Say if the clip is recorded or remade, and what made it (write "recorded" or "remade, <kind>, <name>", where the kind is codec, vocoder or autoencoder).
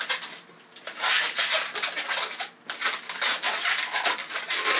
recorded